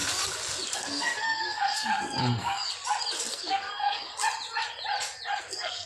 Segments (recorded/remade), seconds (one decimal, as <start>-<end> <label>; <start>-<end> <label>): 0.0-0.8 recorded; 0.8-2.7 remade; 2.7-3.3 recorded; 3.3-4.1 remade; 4.1-5.4 recorded; 5.4-5.9 remade